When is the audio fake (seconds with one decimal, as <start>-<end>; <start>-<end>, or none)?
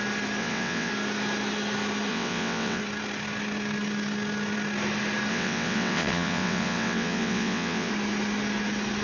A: 0.4-0.9; 2.1-2.8; 5.3-7.9